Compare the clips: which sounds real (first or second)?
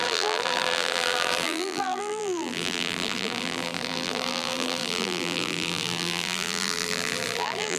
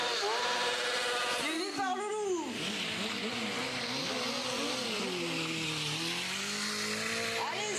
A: second